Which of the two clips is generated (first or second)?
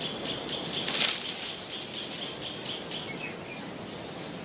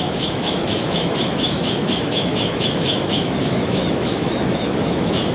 second